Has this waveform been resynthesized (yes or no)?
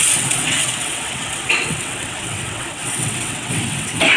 yes